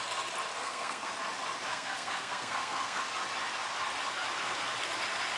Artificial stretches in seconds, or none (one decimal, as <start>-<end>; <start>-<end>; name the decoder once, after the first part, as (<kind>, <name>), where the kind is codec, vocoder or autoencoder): 0.6-1.1 (codec, SNAC); 1.7-3.0